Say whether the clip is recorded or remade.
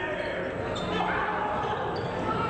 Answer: recorded